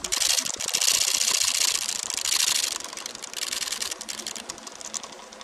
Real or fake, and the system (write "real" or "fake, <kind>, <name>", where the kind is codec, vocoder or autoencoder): real